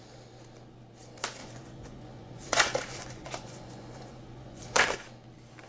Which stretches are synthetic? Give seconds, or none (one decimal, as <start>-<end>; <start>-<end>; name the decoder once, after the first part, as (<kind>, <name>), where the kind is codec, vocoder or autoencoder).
1.4-4.8 (vocoder, Vocos)